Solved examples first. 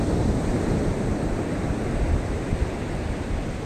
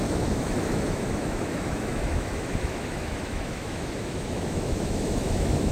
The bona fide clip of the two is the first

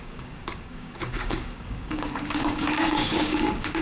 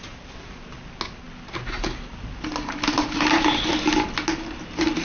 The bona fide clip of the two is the second